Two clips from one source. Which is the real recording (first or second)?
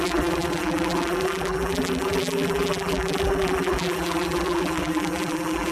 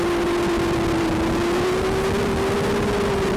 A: second